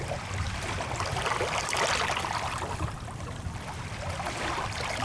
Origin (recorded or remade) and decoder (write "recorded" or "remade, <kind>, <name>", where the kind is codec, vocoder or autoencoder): recorded